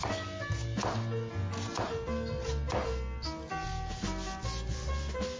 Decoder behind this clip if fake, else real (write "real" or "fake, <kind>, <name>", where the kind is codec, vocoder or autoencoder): real